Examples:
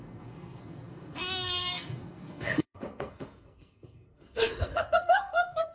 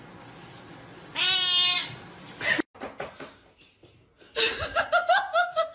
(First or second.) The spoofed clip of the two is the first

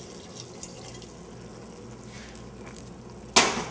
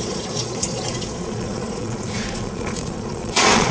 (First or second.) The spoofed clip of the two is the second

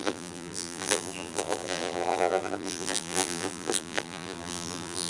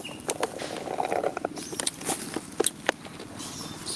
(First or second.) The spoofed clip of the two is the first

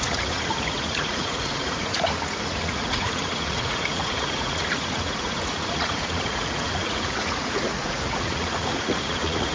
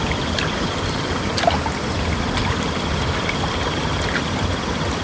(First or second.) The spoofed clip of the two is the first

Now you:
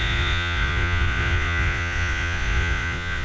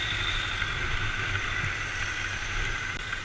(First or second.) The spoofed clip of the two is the first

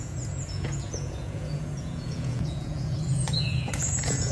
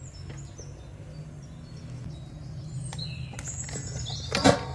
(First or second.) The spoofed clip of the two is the first